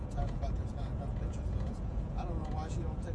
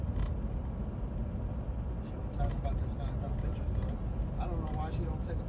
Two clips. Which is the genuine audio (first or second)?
second